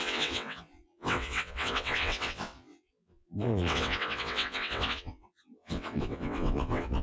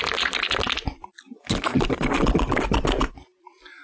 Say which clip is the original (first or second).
second